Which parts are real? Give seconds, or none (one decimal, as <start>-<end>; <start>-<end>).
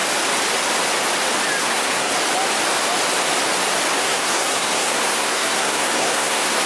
0.0-1.6; 2.1-4.0